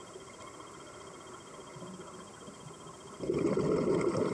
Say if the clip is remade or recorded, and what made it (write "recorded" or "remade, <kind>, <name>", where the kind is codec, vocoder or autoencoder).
recorded